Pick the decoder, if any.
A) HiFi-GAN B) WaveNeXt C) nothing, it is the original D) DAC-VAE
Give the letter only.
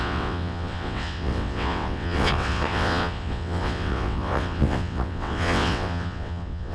B